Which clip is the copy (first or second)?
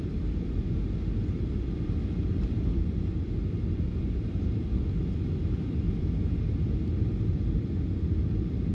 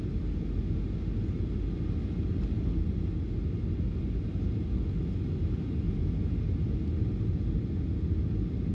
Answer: first